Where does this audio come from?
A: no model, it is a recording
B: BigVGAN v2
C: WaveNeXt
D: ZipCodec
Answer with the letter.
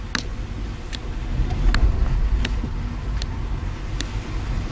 A